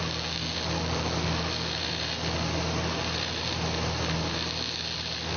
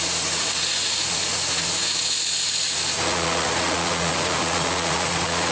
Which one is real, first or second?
first